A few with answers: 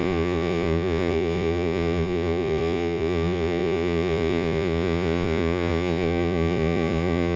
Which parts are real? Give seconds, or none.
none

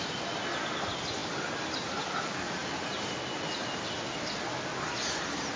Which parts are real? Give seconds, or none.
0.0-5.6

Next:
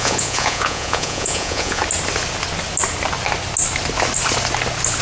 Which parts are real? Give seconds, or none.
1.8-5.0

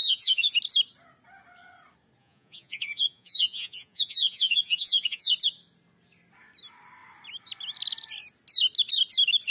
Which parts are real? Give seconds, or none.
0.5-2.2; 5.3-9.5

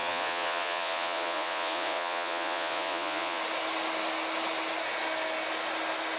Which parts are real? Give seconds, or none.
3.4-6.2